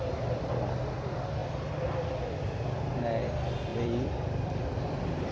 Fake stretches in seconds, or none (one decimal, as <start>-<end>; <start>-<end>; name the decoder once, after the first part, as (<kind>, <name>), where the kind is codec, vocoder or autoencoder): 3.7-5.3 (vocoder, BigVGAN v2)